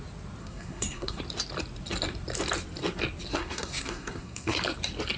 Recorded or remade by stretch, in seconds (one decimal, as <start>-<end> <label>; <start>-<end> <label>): 0.0-0.4 recorded; 0.4-1.2 remade; 1.2-3.3 recorded; 3.3-4.6 remade; 4.6-5.2 recorded